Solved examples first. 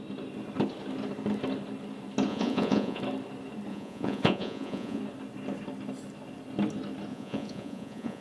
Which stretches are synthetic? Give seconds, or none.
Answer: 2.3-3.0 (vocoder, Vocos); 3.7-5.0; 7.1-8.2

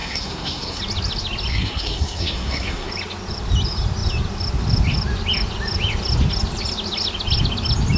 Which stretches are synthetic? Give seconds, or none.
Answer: 0.0-0.8 (codec, SNAC); 1.5-2.9

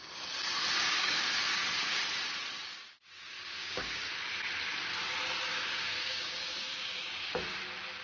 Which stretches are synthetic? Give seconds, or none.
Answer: 0.9-2.0 (codec, DAC); 2.7-4.1; 5.5-7.3

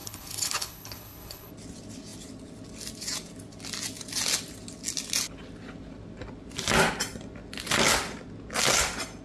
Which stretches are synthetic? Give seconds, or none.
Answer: 0.0-1.5 (codec, HILCodec)

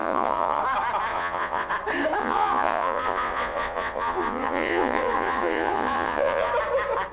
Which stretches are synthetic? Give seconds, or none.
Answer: 0.0-0.6 (vocoder, Vocos); 1.1-1.7; 2.2-6.5

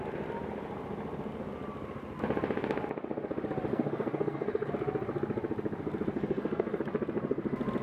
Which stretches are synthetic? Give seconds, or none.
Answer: 3.7-4.7 (codec, SNAC); 6.1-6.8

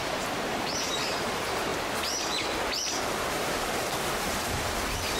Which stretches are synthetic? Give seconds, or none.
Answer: 0.0-1.7 (vocoder, BigVGAN v2); 4.2-5.2

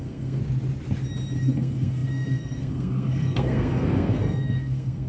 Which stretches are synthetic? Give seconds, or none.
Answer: 0.0-0.4 (codec, SNAC); 1.4-5.1